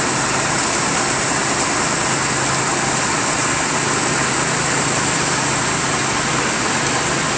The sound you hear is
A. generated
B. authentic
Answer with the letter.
B